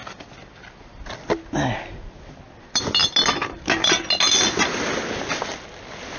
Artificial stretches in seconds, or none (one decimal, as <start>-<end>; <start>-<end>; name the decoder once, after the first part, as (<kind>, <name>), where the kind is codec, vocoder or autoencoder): none